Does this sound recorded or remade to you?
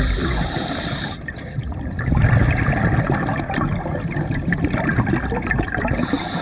remade